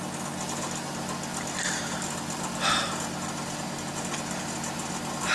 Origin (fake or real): real